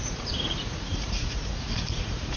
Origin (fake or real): fake